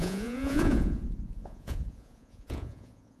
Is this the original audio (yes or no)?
no